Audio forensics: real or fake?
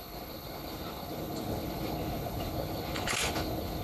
fake